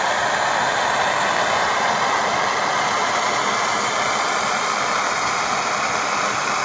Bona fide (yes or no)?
yes